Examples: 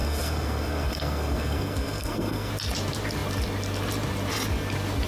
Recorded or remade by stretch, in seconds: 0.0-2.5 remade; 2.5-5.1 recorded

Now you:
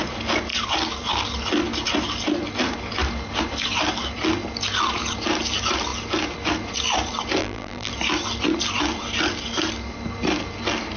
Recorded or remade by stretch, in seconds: 0.0-7.4 recorded; 7.4-7.9 remade; 7.9-11.0 recorded

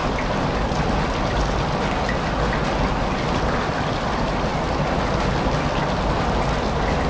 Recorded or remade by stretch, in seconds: 0.0-7.1 recorded

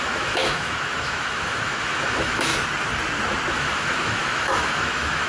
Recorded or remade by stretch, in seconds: 0.0-2.5 remade; 2.5-3.5 recorded; 3.5-5.3 remade

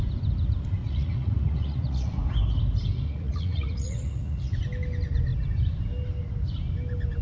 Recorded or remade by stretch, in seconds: 0.0-0.8 recorded; 0.8-2.2 remade; 2.2-2.9 recorded; 2.9-4.5 remade; 4.5-7.2 recorded